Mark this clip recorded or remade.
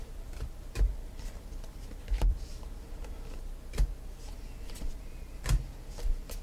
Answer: remade